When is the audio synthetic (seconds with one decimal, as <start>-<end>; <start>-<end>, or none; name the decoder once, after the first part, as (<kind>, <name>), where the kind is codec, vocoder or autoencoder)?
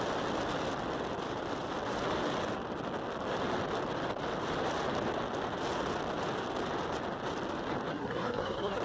7.9-8.8 (codec, SNAC)